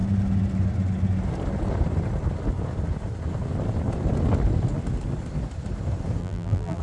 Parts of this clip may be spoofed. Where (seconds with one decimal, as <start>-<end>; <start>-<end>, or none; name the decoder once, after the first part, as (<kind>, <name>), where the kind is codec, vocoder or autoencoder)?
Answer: 6.2-6.8 (vocoder, BigVGAN v2)